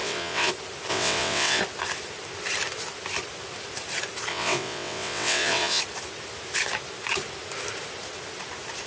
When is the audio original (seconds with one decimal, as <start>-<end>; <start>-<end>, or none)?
0.5-0.9; 1.6-4.3; 5.8-8.9